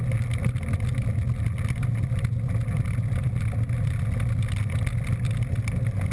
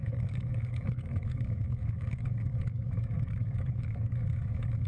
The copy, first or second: second